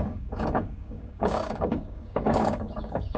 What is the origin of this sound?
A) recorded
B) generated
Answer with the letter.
B